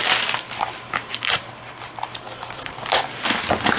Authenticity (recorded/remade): recorded